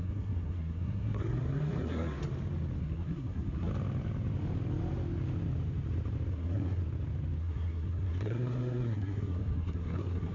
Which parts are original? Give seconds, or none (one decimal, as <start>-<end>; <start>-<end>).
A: 2.2-2.8; 3.7-6.3; 6.8-7.4